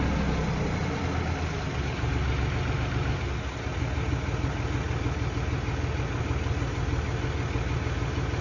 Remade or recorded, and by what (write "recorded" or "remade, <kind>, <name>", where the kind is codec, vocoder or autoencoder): recorded